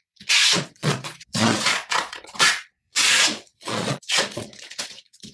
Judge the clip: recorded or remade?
remade